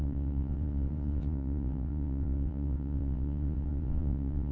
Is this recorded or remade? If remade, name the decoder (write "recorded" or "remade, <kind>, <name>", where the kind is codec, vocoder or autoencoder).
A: remade, vocoder, WaveNeXt